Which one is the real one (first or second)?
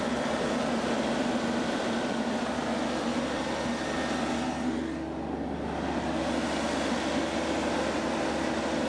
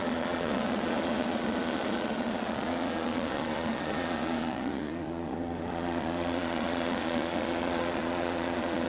first